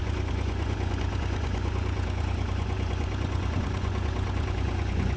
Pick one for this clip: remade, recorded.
remade